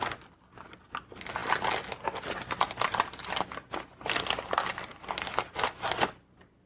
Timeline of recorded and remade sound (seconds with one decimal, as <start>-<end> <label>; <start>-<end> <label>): 0.0-6.7 recorded